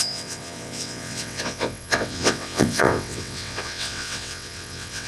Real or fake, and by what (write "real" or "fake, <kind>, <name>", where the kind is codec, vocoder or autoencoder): fake, vocoder, WaveNeXt